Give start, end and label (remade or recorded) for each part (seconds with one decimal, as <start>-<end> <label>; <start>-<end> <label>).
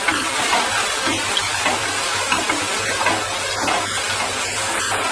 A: 0.0-5.1 recorded